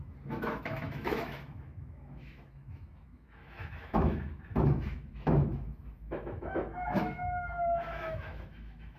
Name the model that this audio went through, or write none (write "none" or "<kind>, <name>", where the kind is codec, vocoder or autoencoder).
autoencoder, DAC-VAE